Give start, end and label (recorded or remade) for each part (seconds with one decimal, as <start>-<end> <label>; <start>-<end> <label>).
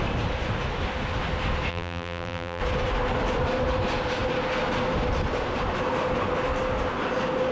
0.0-1.7 recorded; 1.7-2.6 remade; 2.6-7.5 recorded